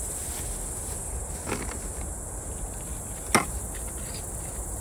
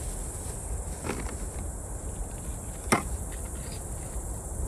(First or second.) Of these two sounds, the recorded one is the first